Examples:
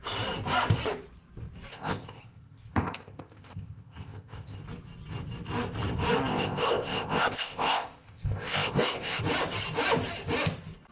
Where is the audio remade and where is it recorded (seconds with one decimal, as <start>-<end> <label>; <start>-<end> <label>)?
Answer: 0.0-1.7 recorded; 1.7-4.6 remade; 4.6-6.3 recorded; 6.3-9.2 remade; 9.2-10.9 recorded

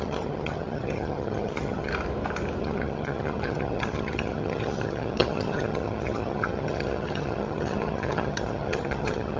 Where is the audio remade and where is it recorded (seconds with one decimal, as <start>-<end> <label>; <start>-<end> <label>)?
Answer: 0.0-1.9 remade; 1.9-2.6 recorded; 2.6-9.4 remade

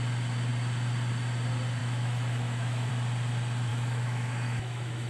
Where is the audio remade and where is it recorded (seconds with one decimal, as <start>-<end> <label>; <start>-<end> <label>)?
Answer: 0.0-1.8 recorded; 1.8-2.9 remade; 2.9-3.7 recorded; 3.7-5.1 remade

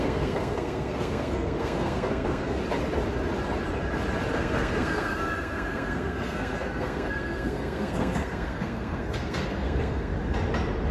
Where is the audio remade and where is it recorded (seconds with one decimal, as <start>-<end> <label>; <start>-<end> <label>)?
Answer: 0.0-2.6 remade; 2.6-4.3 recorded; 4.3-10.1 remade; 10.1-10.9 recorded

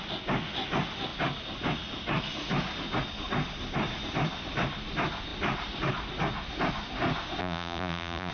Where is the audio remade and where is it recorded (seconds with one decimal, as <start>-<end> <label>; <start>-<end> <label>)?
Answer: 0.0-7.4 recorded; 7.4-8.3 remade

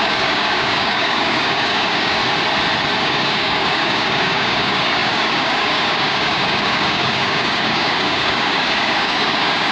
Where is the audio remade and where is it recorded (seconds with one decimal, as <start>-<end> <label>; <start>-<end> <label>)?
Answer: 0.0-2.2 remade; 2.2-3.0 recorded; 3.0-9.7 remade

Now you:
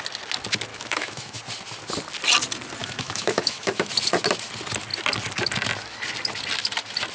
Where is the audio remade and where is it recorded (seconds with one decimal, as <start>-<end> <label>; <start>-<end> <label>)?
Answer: 0.0-0.7 recorded; 0.7-1.4 remade; 1.4-2.8 recorded; 2.8-3.9 remade; 3.9-7.1 recorded

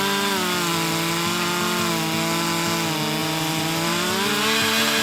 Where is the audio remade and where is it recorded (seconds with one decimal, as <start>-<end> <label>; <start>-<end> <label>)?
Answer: 0.0-3.2 recorded; 3.2-4.1 remade; 4.1-5.0 recorded